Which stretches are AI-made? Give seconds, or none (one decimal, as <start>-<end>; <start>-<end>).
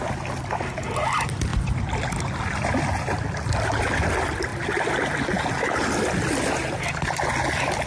none